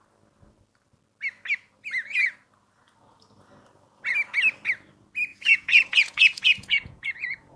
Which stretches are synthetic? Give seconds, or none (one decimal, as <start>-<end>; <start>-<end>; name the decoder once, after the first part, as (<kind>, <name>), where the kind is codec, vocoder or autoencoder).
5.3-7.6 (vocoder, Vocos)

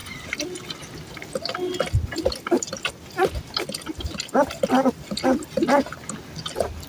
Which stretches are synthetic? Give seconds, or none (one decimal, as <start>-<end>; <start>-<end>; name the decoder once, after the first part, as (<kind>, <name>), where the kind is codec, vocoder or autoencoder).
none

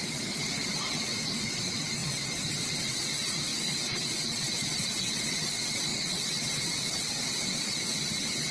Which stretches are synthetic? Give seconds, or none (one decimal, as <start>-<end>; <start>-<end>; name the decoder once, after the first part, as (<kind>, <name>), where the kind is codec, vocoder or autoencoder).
0.0-8.5 (vocoder, WaveNeXt)